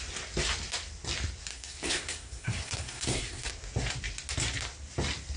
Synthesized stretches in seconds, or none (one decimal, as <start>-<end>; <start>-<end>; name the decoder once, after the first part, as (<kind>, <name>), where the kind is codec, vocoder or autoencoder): 1.5-3.5 (codec, SNAC)